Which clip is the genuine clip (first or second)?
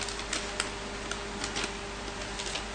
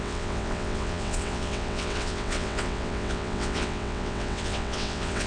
first